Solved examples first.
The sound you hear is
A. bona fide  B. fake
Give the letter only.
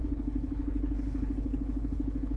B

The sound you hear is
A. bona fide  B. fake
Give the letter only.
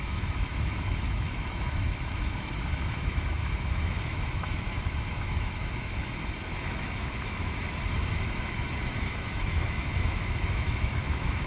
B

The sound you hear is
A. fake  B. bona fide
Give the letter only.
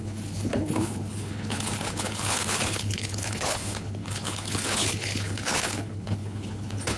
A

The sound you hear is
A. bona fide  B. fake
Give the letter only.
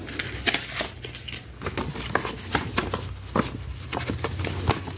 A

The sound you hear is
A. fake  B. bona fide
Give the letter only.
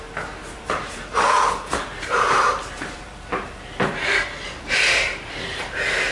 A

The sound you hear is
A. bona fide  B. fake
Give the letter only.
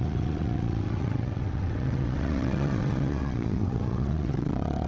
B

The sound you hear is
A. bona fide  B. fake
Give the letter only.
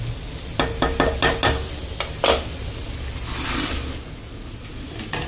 A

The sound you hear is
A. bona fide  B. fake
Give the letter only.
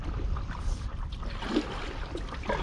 A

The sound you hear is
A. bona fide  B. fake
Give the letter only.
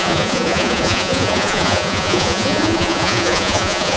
B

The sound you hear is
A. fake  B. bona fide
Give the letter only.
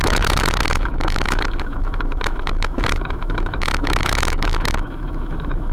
A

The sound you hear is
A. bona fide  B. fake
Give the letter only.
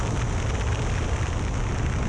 A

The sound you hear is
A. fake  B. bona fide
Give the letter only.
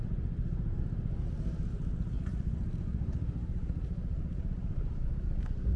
A